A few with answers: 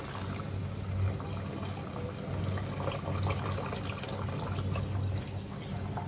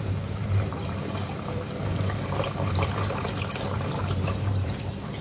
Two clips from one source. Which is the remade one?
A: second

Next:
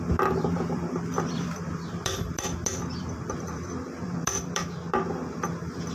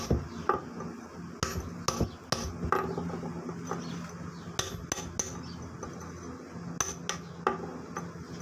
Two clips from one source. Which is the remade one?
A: first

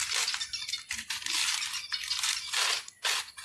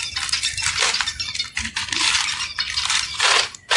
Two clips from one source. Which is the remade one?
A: second